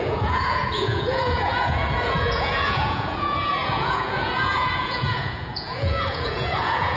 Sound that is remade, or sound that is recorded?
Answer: remade